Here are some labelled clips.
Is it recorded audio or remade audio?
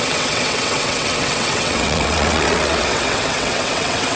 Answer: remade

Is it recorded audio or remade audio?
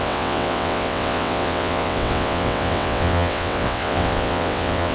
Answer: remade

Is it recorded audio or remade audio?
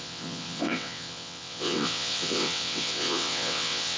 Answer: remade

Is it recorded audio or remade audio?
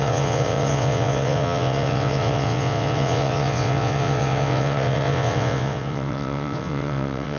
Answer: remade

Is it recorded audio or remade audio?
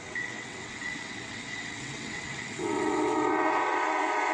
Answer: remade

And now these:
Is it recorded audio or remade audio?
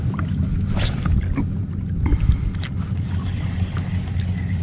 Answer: recorded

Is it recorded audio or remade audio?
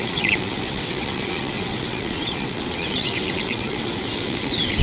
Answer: remade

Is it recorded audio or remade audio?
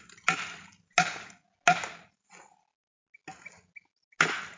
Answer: recorded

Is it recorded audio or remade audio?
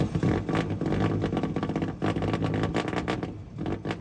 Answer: recorded